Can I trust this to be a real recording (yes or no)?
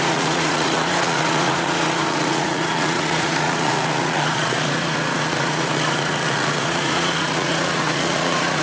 no